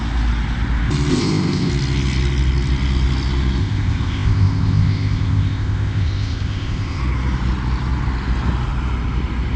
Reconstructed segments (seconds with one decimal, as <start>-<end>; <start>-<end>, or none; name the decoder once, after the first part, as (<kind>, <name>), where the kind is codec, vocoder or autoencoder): 1.1-1.7 (codec, ZipCodec); 3.6-7.0